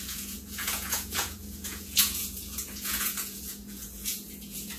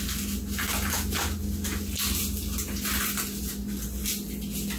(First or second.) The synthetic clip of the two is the first